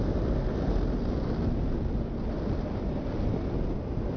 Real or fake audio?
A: real